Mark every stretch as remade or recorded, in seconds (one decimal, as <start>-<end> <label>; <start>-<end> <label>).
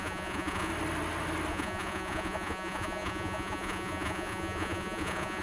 0.0-0.7 remade; 0.7-1.5 recorded; 1.5-5.4 remade